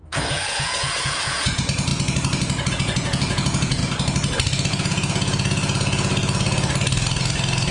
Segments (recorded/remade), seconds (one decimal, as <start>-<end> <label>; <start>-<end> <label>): 0.0-1.9 remade; 1.9-2.7 recorded; 2.7-3.8 remade; 3.8-4.7 recorded; 4.7-6.1 remade; 6.1-7.7 recorded

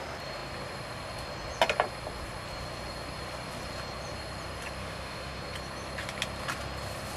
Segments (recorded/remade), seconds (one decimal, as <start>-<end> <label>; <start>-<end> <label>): 0.0-4.8 recorded; 4.8-5.4 remade; 5.4-7.2 recorded

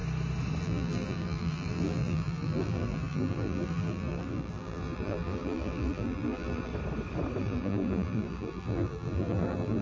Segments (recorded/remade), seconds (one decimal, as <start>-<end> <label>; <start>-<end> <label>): 0.0-0.6 recorded; 0.6-6.7 remade; 6.7-7.4 recorded; 7.4-9.8 remade

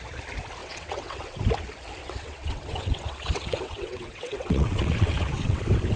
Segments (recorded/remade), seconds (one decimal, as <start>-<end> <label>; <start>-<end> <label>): 0.0-0.6 recorded; 0.6-1.4 remade; 1.4-2.0 recorded; 2.0-5.6 remade; 5.6-6.0 recorded

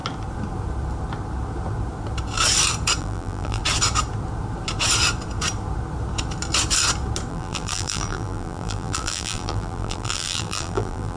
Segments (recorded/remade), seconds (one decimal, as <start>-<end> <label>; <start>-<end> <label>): 0.0-3.0 recorded; 3.0-3.6 remade; 3.6-7.3 recorded; 7.3-11.2 remade

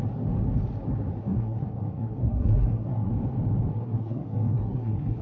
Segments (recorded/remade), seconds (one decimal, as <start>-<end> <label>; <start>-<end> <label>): 0.0-1.2 recorded; 1.2-3.1 remade; 3.1-3.7 recorded; 3.7-5.2 remade

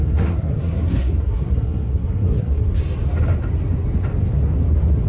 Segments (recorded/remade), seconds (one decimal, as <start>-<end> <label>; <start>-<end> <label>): 0.0-2.8 remade; 2.8-5.1 recorded

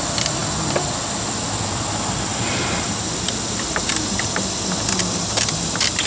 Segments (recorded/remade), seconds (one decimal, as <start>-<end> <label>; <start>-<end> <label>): 0.0-6.1 recorded